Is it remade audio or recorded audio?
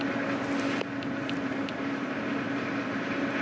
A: recorded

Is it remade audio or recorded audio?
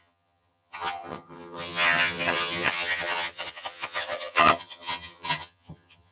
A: remade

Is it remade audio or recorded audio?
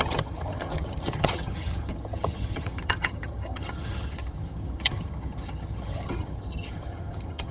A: remade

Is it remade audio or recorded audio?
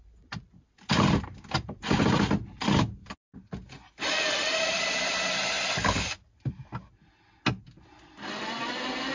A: recorded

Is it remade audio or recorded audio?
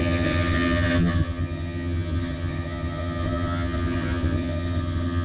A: remade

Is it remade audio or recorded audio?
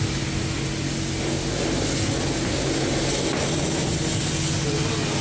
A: recorded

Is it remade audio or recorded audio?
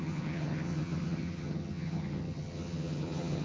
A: remade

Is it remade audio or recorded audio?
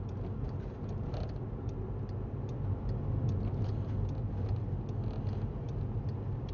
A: recorded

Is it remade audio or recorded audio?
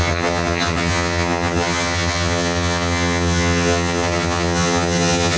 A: remade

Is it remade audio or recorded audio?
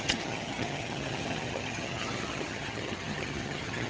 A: remade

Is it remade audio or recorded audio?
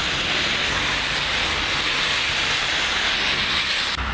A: recorded